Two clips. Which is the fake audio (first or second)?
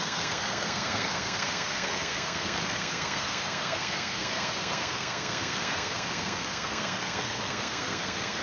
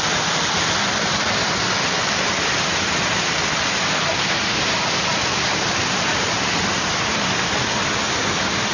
first